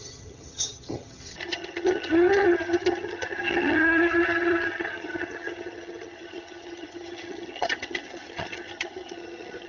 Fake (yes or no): yes